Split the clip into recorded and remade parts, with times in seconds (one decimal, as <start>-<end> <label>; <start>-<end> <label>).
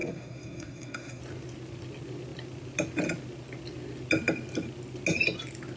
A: 0.0-1.2 remade; 1.2-5.8 recorded